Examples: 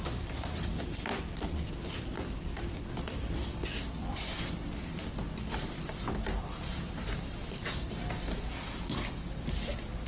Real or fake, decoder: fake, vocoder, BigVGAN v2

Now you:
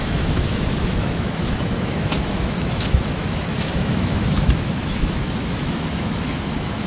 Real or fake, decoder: fake, autoencoder, DAC-VAE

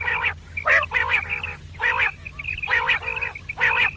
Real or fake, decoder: real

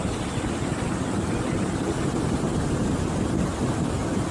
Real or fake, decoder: real